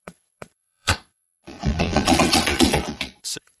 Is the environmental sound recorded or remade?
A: remade